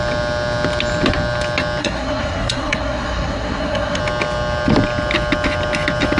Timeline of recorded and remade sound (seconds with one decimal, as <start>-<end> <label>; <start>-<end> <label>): 0.0-1.8 recorded; 1.8-4.0 remade; 4.0-6.2 recorded